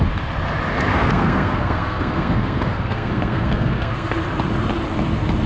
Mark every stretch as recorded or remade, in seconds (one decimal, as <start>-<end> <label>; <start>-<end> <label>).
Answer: 0.0-0.9 recorded; 0.9-4.2 remade; 4.2-5.5 recorded